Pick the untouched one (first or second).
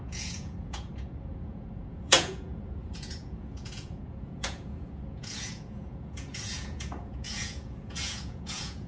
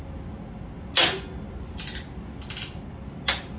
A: second